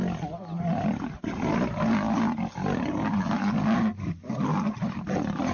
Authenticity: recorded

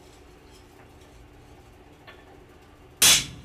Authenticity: recorded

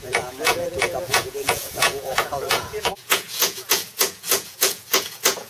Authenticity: remade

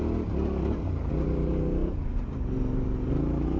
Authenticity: recorded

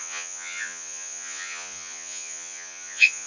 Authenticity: remade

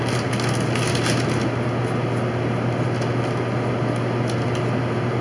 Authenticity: recorded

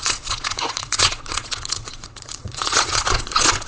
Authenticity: remade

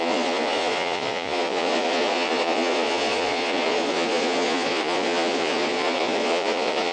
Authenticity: remade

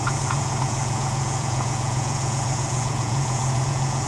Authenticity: remade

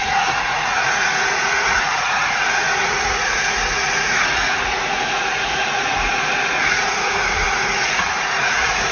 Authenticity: remade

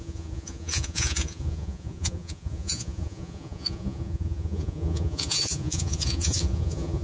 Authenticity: remade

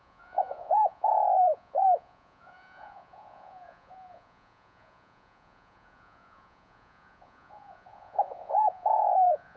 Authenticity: remade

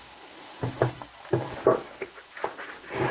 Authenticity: recorded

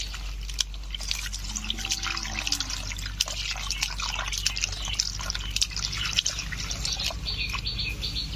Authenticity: recorded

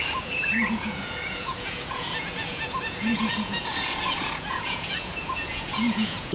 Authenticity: remade